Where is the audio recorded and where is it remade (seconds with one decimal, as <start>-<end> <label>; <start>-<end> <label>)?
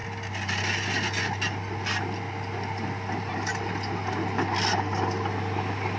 0.0-6.0 recorded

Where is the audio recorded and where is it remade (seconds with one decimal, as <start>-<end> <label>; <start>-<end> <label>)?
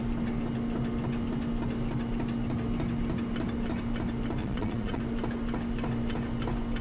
0.0-4.4 recorded; 4.4-5.0 remade; 5.0-6.8 recorded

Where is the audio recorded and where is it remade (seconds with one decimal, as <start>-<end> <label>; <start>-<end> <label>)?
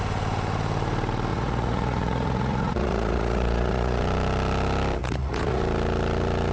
0.0-1.3 recorded; 1.3-4.0 remade; 4.0-5.0 recorded; 5.0-5.6 remade; 5.6-6.5 recorded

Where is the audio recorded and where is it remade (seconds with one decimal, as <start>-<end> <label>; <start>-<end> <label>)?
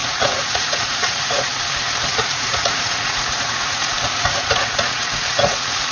0.0-1.6 remade; 1.6-2.1 recorded; 2.1-5.9 remade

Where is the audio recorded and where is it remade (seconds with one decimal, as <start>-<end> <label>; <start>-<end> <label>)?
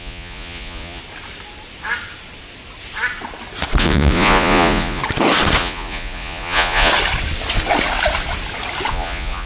0.0-1.0 remade; 1.0-3.8 recorded; 3.8-5.0 remade; 5.0-5.6 recorded; 5.6-6.9 remade; 6.9-8.9 recorded; 8.9-9.5 remade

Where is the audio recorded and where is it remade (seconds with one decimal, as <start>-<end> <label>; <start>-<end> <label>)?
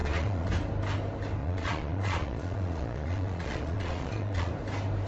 0.0-0.5 remade; 0.5-1.4 recorded; 1.4-4.5 remade; 4.5-5.1 recorded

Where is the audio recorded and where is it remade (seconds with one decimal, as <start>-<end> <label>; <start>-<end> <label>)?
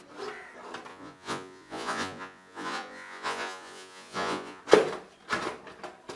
0.0-0.9 recorded; 0.9-4.6 remade; 4.6-6.2 recorded